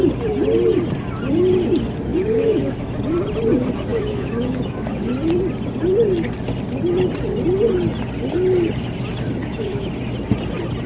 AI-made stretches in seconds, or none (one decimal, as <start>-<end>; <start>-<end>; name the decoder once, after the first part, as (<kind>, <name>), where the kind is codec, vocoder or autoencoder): 2.1-3.0 (autoencoder, DAC-VAE); 3.9-5.1; 9.4-9.9